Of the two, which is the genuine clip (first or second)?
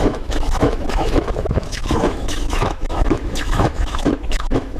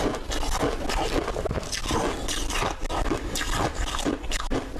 second